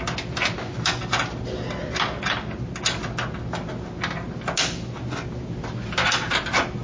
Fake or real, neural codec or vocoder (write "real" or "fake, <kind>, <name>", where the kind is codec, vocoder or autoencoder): real